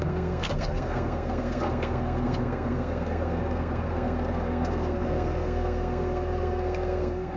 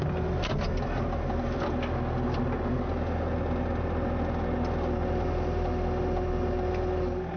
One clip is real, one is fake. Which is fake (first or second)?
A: first